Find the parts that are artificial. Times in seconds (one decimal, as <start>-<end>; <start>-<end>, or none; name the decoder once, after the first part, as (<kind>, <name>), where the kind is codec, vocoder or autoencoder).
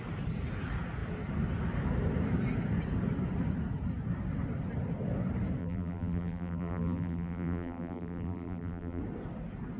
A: 5.6-9.0 (vocoder, BigVGAN v2)